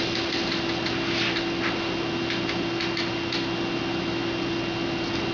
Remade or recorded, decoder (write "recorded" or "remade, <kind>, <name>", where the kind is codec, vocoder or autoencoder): recorded